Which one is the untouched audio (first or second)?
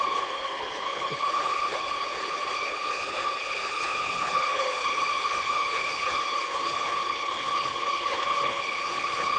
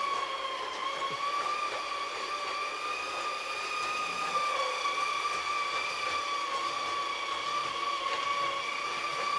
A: second